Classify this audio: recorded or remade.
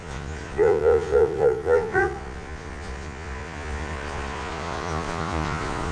remade